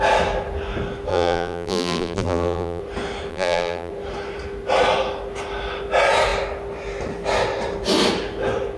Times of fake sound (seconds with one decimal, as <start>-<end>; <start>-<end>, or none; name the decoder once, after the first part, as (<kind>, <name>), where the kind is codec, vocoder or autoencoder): 1.1-2.8 (vocoder, BigVGAN v2); 3.3-3.9